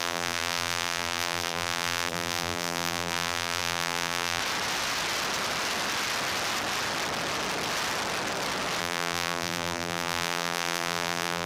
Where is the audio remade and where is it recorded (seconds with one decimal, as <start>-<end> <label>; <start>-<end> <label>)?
0.0-4.4 remade; 4.4-8.8 recorded; 8.8-11.5 remade